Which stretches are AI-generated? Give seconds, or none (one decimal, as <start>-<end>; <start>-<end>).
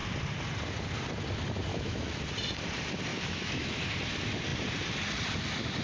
1.7-2.2; 3.1-3.8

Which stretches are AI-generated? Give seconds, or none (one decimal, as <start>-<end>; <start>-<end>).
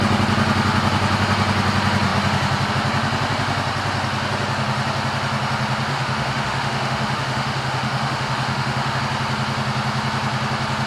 5.9-9.0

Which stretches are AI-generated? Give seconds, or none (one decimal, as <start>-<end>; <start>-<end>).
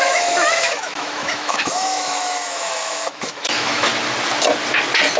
0.0-3.9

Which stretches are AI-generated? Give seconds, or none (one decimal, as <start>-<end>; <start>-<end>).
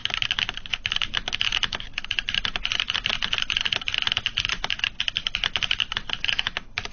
none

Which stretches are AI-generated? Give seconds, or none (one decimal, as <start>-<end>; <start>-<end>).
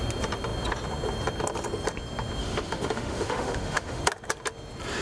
2.4-4.0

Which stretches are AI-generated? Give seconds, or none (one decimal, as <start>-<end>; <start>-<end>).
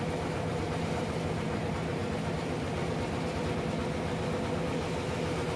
none